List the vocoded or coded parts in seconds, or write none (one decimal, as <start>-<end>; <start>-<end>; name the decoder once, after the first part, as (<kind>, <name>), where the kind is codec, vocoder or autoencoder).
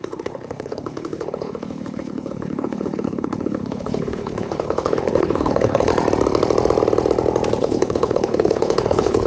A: 0.0-5.9 (codec, HILCodec); 7.6-9.3